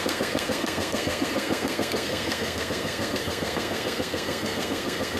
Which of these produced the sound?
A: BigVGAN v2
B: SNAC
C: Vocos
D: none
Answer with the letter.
B